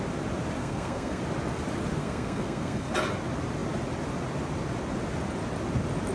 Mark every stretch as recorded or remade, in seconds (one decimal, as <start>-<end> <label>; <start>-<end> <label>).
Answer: 0.0-0.6 recorded; 0.6-1.2 remade; 1.2-2.0 recorded; 2.0-2.9 remade; 2.9-6.1 recorded